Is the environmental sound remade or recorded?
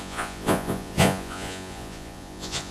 remade